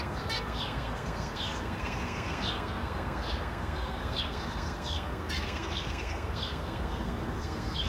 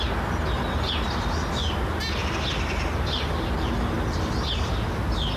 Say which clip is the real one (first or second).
second